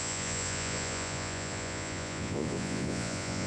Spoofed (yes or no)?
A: yes